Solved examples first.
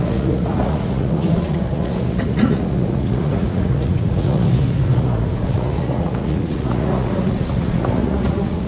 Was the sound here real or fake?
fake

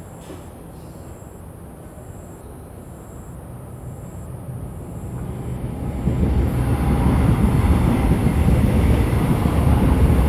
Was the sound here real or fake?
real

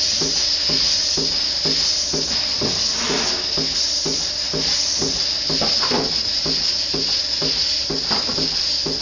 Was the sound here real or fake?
real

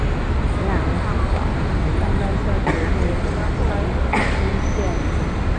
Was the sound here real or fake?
real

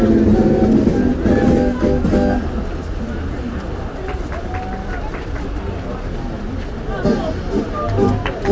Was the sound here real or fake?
real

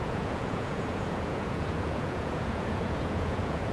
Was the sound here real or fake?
fake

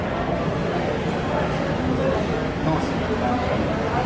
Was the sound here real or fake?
real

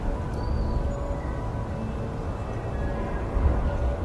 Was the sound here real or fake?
real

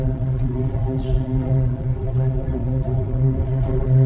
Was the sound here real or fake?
fake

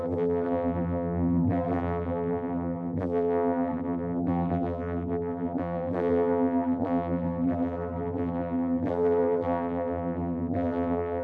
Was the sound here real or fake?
fake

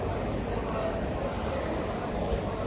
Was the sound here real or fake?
real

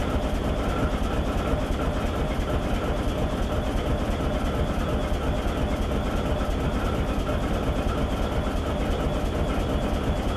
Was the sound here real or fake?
real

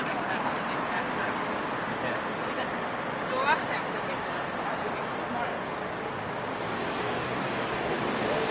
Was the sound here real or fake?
real